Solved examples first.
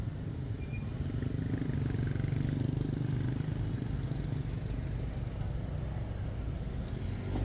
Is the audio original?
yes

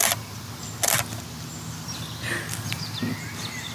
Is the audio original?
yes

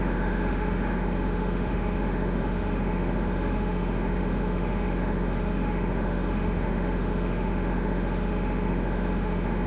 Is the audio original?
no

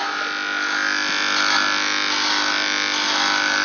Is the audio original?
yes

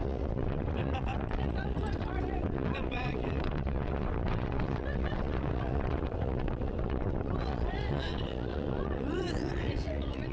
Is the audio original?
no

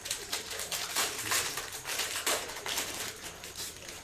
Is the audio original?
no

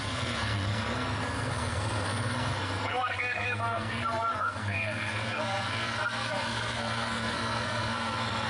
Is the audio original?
no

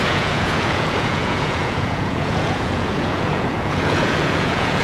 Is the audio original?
no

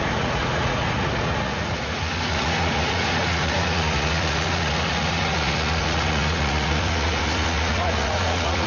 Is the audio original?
no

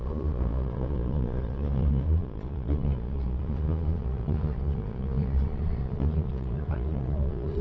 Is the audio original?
no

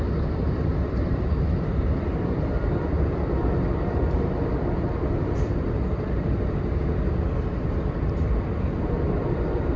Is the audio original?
no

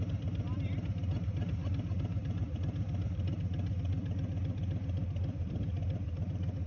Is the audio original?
yes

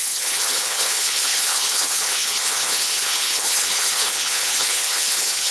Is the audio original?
no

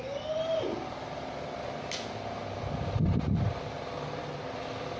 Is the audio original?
yes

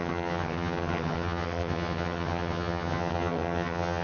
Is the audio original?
no